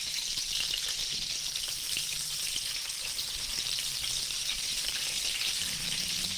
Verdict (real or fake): fake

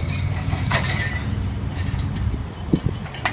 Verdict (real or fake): fake